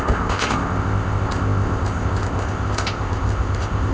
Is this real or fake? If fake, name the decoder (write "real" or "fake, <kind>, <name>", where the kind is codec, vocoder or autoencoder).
fake, codec, ZipCodec